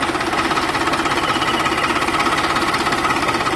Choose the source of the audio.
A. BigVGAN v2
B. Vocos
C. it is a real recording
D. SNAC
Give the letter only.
A